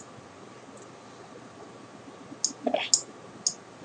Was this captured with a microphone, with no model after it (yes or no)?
yes